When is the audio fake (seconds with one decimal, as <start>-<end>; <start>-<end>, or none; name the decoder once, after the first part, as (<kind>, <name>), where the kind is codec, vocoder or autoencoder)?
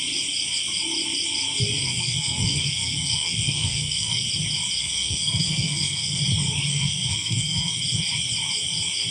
1.8-4.3 (codec, SNAC); 4.8-6.2; 6.7-7.8